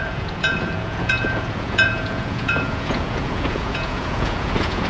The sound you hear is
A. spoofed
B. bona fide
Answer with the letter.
A